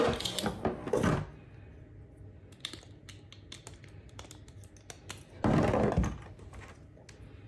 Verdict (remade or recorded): recorded